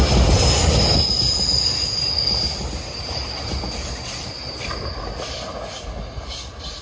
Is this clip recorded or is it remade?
recorded